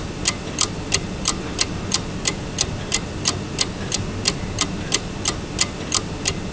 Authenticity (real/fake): real